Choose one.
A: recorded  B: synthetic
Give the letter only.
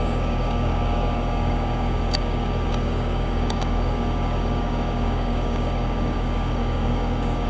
B